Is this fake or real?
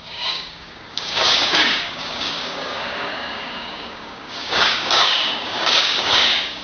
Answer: fake